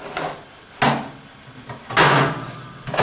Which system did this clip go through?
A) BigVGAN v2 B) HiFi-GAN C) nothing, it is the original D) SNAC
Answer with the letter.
C